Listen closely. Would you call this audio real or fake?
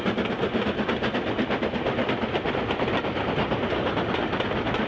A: real